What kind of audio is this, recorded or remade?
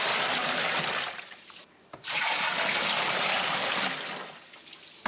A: recorded